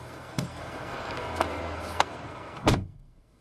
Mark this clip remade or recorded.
remade